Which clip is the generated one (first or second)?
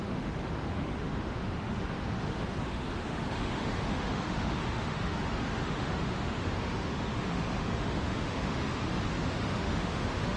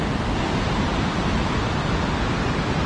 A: first